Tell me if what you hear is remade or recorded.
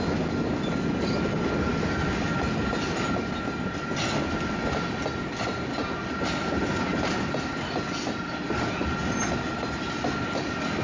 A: recorded